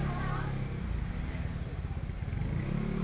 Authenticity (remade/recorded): recorded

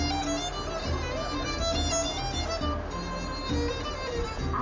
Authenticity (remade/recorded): recorded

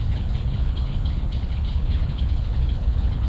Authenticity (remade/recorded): remade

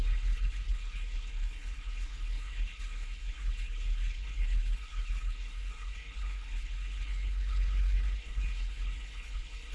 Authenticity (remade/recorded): remade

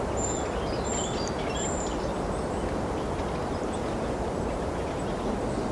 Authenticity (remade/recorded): recorded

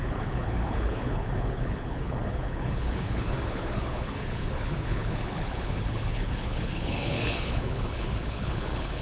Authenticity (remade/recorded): remade